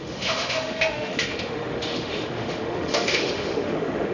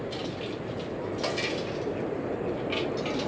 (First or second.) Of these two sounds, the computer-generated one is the first